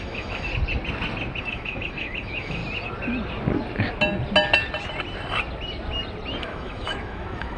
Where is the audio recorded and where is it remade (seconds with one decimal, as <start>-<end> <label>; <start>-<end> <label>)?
0.0-0.5 remade; 0.5-1.4 recorded; 1.4-2.6 remade; 2.6-6.4 recorded; 6.4-7.6 remade